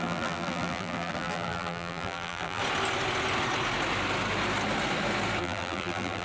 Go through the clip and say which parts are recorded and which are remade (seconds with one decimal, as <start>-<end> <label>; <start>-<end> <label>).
0.0-2.6 remade; 2.6-5.4 recorded; 5.4-6.2 remade